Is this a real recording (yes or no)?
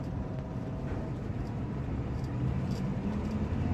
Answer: no